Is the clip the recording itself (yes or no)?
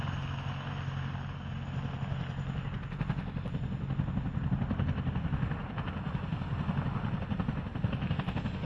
yes